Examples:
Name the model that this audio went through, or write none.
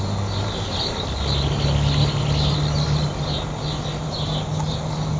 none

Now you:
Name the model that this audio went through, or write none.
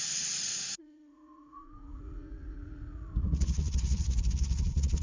vocoder, Vocos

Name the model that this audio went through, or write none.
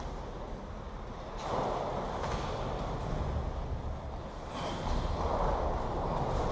none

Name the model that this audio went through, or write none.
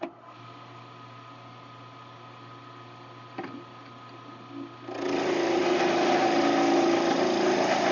none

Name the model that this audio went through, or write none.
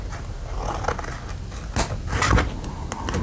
none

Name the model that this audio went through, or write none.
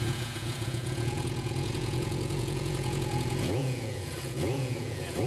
vocoder, Vocos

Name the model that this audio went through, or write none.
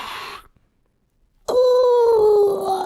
none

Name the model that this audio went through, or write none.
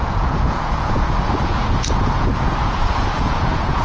vocoder, Vocos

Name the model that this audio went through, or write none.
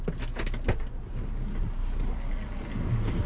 none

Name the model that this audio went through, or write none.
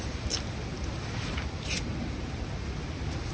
none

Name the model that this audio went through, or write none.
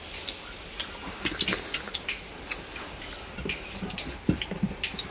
none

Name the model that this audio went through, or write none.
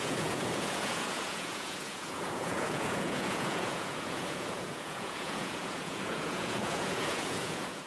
vocoder, Vocos